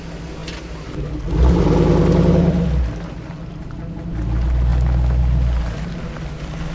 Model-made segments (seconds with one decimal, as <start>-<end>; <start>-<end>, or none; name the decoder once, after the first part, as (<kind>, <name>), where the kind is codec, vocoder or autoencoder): none